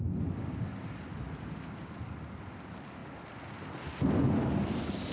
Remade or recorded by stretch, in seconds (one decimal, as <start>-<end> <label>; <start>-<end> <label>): 0.0-5.1 recorded